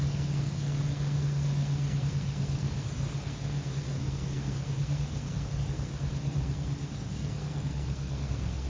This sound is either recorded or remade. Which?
remade